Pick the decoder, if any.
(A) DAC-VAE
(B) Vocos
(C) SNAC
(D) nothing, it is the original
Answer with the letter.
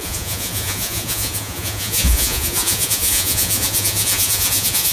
B